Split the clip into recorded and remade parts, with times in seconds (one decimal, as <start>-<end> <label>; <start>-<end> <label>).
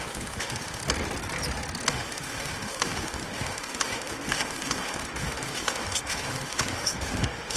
0.0-0.8 remade; 0.8-1.9 recorded; 1.9-7.6 remade